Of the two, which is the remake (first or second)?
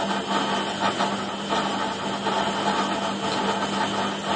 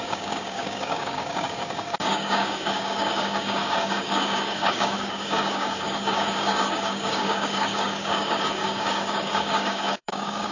second